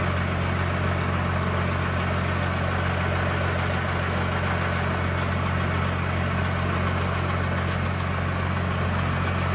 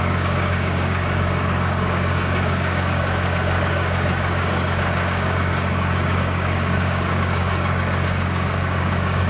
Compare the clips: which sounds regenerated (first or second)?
second